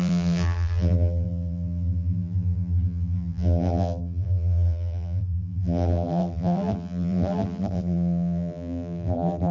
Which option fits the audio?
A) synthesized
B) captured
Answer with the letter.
A